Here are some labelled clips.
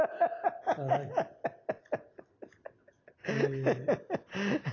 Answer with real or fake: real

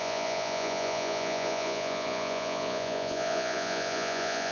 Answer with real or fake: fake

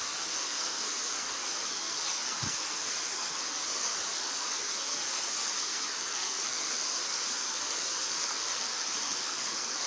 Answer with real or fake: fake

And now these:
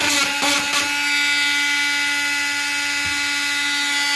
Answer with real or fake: real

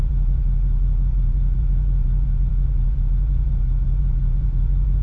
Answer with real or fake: fake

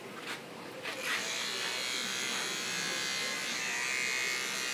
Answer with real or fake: real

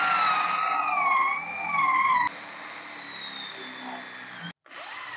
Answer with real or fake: real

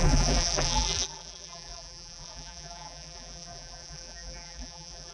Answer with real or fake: fake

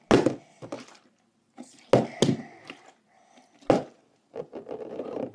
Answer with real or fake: real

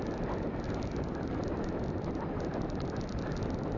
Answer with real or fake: real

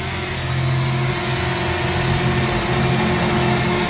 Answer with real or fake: real